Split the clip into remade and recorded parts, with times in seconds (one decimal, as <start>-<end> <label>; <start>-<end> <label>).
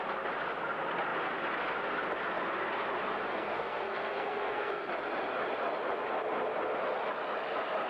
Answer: 0.0-3.3 recorded; 3.3-4.9 remade; 4.9-7.9 recorded